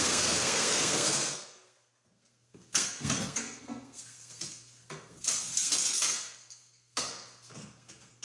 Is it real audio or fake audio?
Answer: fake